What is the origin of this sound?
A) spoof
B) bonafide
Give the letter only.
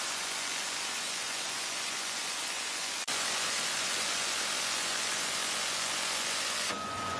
A